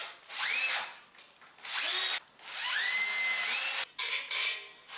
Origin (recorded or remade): recorded